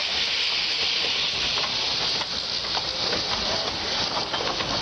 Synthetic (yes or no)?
no